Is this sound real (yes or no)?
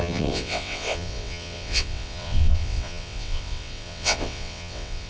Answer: no